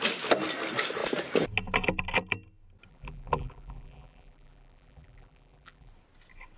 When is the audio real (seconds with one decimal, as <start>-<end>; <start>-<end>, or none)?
0.0-2.9; 5.9-6.6